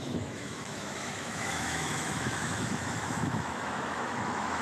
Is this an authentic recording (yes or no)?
no